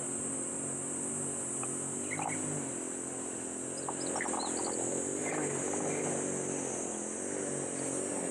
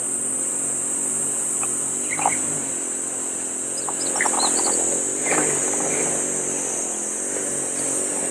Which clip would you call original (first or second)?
first